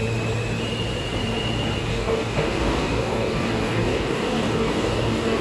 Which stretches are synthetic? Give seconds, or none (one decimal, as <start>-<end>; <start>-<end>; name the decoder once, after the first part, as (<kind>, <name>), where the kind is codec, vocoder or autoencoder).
1.9-5.4 (codec, DAC)